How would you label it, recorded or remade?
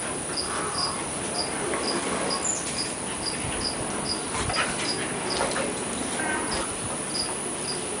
recorded